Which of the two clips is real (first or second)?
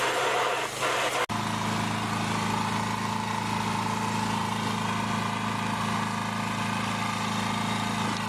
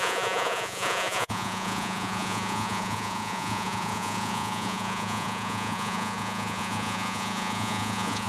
first